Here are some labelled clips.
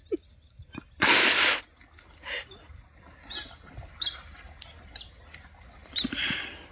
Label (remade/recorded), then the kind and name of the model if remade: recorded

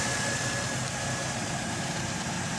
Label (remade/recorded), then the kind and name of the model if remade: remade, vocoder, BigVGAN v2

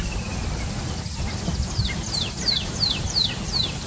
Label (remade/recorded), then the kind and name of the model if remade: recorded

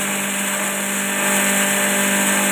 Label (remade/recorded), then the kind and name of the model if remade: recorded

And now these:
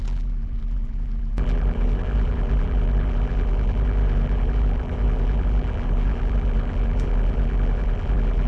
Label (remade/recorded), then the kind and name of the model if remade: remade, vocoder, BigVGAN v2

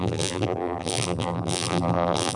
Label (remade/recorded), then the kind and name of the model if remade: remade, vocoder, BigVGAN v2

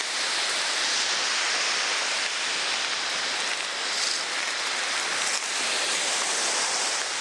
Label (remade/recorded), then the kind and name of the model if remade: recorded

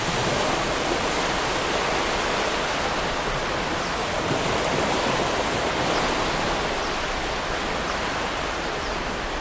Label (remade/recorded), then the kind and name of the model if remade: recorded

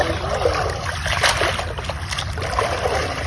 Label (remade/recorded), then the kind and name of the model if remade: recorded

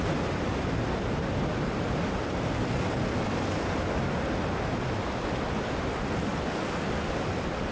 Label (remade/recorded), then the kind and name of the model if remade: recorded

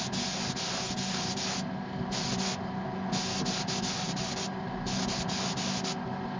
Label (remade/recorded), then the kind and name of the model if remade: recorded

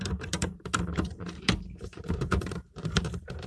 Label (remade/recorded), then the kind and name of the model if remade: remade, vocoder, BigVGAN v2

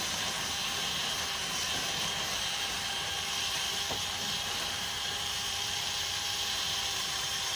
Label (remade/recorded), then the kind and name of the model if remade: remade, vocoder, BigVGAN v2